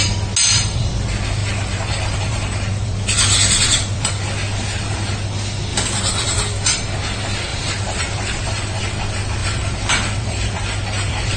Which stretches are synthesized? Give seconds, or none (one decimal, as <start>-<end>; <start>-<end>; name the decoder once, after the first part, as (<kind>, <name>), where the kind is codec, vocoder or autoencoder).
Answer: 1.4-4.1 (vocoder, BigVGAN v2); 5.7-6.4; 7.5-8.8; 9.4-11.4